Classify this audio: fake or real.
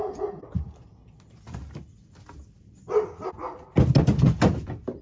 real